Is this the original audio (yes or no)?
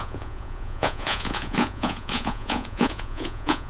no